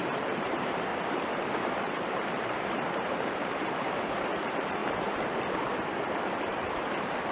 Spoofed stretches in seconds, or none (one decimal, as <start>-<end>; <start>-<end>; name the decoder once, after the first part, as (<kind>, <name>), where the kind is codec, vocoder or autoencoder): 0.0-0.9 (vocoder, BigVGAN v2); 2.1-4.8; 5.5-7.3